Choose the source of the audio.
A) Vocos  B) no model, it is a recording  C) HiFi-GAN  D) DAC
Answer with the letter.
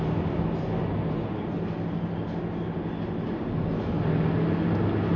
B